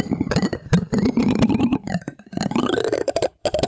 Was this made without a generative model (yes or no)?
yes